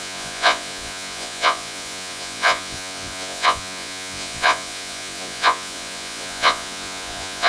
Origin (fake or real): fake